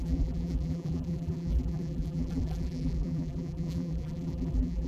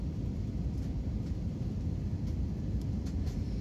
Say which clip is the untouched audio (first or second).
second